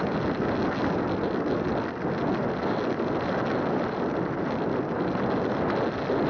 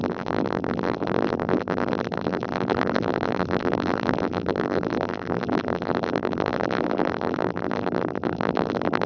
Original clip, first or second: first